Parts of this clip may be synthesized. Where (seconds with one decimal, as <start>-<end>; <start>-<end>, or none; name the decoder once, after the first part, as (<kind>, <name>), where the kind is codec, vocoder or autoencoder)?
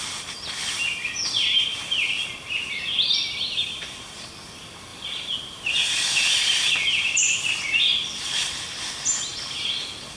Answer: 4.9-8.6 (vocoder, BigVGAN v2)